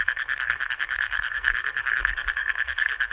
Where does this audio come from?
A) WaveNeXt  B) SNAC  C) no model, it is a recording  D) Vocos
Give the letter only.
B